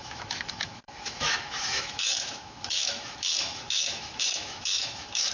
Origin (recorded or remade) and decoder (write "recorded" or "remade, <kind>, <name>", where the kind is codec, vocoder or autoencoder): remade, autoencoder, DAC-VAE